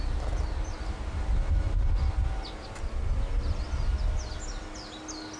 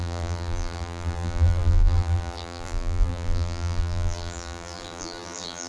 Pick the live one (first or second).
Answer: first